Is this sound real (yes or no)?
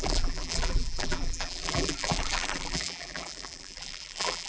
no